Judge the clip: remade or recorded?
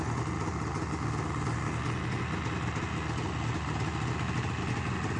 recorded